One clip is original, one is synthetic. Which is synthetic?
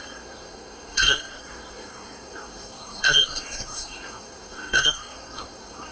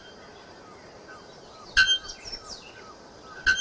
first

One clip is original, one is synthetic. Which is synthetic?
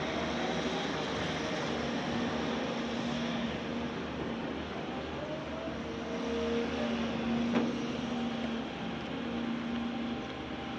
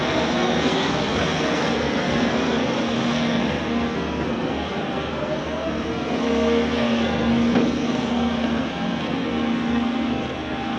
second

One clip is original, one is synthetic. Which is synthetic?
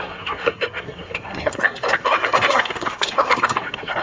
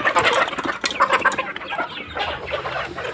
first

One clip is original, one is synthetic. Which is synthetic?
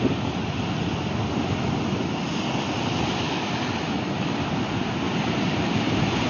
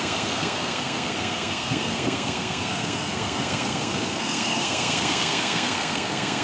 second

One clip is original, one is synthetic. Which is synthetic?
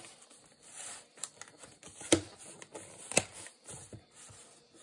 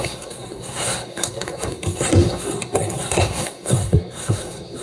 second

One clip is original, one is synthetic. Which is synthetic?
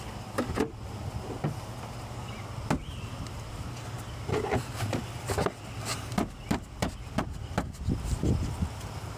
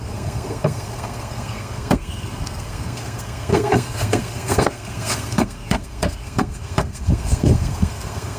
second